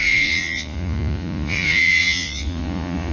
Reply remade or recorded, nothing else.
remade